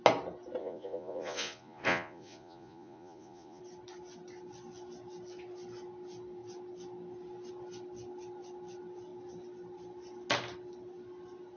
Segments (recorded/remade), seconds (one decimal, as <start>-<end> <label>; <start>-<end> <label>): 0.0-0.6 recorded; 0.6-3.6 remade; 3.6-11.6 recorded